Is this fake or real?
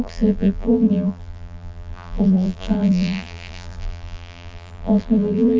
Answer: fake